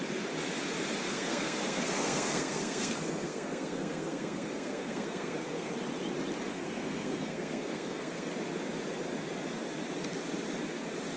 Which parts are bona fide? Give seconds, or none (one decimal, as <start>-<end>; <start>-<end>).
0.0-1.1; 5.7-6.5; 8.3-11.2